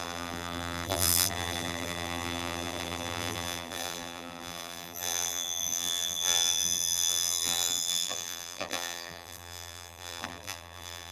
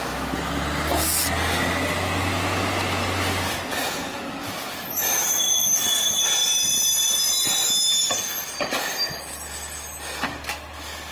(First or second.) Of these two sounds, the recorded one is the second